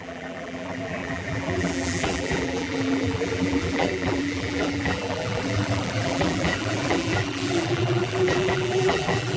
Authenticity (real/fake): fake